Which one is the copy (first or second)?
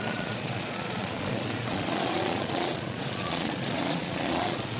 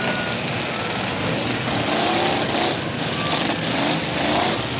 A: first